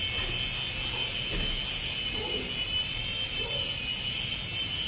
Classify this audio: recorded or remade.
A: recorded